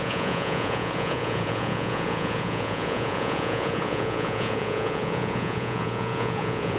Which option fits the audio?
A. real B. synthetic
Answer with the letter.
B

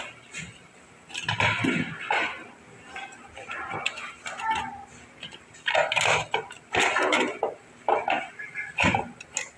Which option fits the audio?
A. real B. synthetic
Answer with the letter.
A